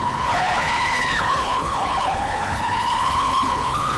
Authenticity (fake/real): fake